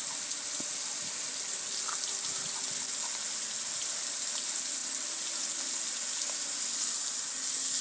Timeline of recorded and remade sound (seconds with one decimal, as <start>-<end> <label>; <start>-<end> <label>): 0.0-7.8 recorded